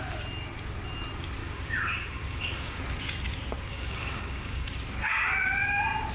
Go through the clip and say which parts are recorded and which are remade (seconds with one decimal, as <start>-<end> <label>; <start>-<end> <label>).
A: 0.0-1.4 recorded; 1.4-2.8 remade; 2.8-3.7 recorded; 3.7-4.7 remade; 4.7-6.1 recorded